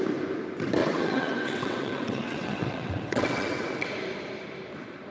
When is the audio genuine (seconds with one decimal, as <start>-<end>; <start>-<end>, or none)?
0.0-0.8; 3.9-5.1